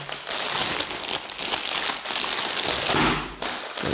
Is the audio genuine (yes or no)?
yes